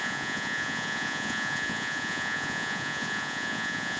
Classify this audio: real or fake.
fake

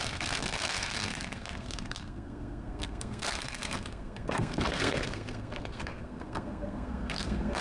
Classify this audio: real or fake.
fake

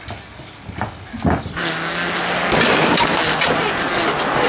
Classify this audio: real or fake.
real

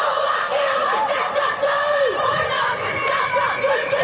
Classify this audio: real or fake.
fake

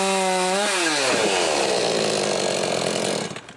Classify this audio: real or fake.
real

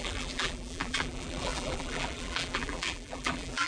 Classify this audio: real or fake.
fake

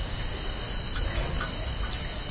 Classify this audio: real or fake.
real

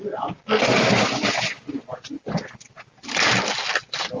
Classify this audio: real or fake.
real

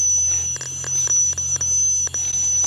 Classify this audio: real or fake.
real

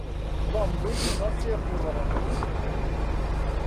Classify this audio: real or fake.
real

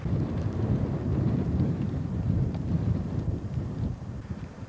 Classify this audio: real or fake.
real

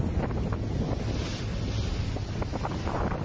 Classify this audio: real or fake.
real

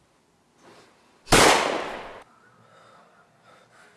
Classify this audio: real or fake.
real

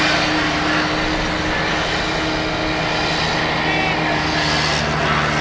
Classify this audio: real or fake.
real